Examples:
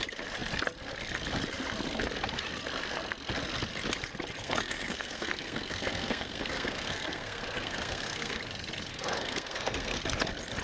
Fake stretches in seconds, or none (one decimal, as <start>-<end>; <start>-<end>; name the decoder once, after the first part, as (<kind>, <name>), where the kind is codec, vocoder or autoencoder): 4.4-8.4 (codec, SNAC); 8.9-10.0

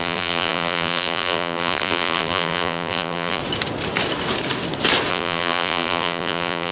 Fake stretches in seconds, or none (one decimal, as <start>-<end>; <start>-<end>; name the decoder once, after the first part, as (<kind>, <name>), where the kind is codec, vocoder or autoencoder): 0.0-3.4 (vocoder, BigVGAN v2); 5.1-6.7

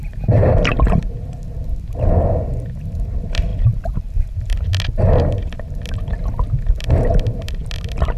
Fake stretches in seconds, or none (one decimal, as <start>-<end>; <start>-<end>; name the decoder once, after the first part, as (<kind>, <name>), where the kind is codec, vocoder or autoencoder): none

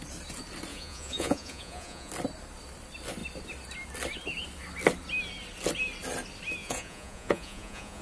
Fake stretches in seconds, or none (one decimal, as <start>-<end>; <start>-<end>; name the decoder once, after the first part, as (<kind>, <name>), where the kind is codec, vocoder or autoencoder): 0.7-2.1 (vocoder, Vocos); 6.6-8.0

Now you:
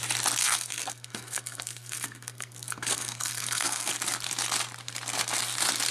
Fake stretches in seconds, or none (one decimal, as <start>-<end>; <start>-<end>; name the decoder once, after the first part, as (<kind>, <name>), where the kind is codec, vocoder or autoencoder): 0.4-3.9 (codec, SNAC)